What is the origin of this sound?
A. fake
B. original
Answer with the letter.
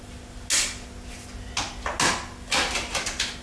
B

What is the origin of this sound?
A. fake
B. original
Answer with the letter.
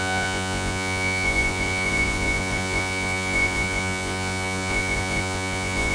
A